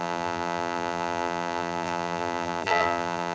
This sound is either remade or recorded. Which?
remade